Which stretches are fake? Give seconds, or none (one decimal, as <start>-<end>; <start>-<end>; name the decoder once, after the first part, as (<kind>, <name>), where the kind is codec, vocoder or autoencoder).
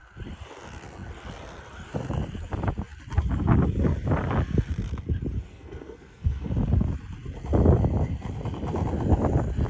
5.5-6.5 (codec, SNAC)